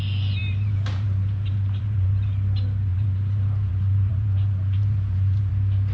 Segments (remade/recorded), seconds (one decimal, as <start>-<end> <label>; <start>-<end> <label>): 0.0-0.4 recorded; 0.4-2.3 remade; 2.3-2.9 recorded; 2.9-5.5 remade; 5.5-5.9 recorded